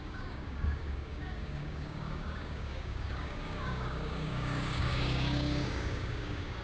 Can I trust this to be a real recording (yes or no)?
no